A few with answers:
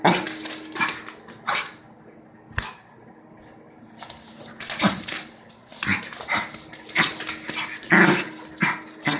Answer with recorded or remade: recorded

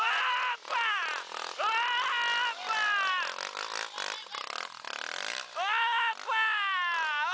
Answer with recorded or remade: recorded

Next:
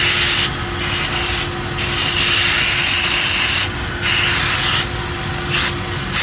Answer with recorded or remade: recorded